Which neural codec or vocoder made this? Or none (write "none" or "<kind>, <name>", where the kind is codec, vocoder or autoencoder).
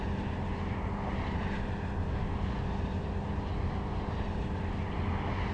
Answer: none